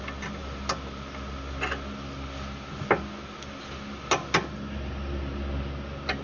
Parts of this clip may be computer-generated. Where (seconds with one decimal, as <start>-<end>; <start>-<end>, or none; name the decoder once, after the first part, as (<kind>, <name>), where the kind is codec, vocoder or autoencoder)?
none